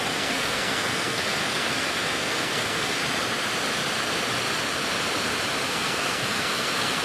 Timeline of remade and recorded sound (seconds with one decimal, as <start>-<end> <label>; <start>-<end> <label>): 0.0-3.0 remade; 3.0-5.7 recorded; 5.7-7.0 remade